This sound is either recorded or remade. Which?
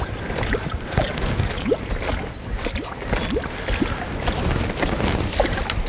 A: recorded